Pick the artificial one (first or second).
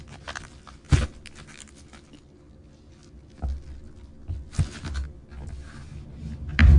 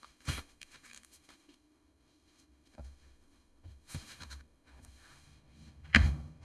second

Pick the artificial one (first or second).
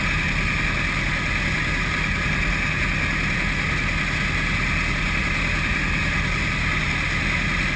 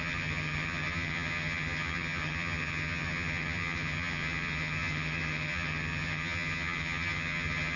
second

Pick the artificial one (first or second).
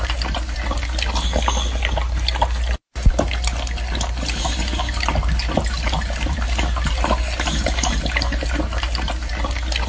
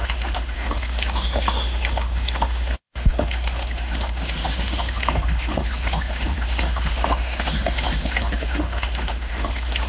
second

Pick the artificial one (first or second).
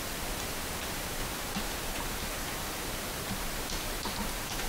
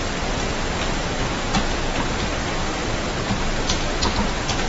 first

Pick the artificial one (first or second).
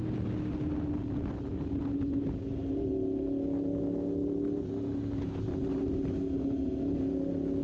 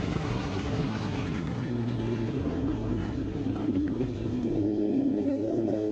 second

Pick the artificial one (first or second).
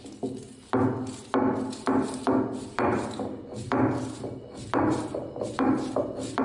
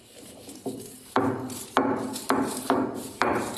second